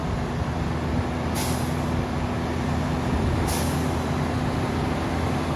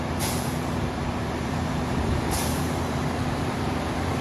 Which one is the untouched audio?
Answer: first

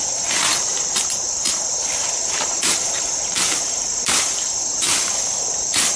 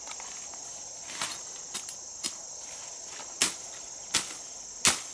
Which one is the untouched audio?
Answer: second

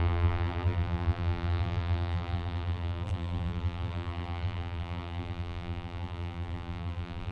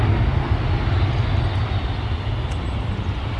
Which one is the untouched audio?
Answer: second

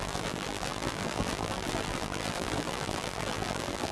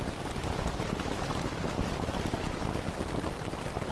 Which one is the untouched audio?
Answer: second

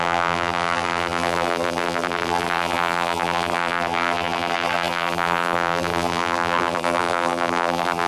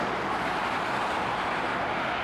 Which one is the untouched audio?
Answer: second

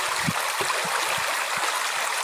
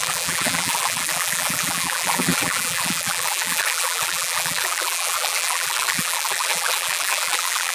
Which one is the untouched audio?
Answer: first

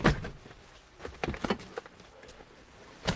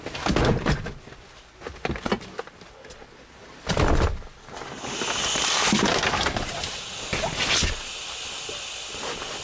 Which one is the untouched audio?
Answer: second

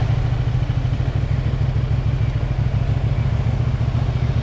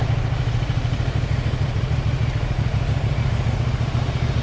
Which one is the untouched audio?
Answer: first